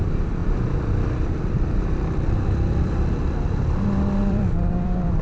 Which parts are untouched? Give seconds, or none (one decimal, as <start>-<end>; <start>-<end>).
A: none